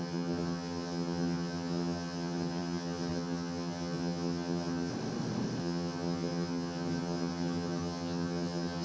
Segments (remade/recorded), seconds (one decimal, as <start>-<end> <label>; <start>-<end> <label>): 0.0-4.9 remade; 4.9-5.6 recorded; 5.6-8.8 remade